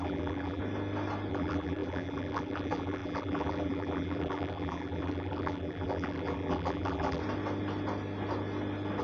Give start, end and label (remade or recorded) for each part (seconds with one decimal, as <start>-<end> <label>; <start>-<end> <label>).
0.0-0.6 remade; 0.6-1.3 recorded; 1.3-7.2 remade; 7.2-9.0 recorded